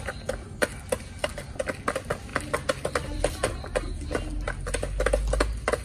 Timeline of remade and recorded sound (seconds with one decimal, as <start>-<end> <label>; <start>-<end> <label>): 0.0-5.8 recorded